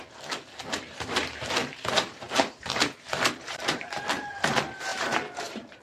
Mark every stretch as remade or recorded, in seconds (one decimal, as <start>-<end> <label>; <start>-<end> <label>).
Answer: 0.0-0.8 recorded; 0.8-5.8 remade